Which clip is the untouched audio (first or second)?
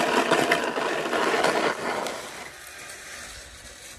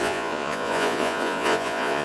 first